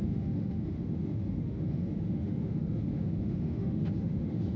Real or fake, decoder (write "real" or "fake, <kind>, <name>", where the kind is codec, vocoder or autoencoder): fake, autoencoder, DAC-VAE